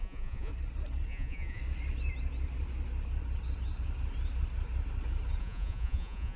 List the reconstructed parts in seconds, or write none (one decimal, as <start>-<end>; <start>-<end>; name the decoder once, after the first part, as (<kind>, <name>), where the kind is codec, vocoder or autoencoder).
0.0-0.5 (vocoder, Vocos); 1.1-1.6; 5.4-6.4